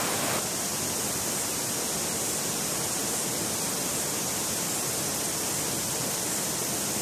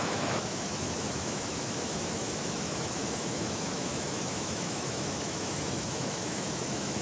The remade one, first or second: second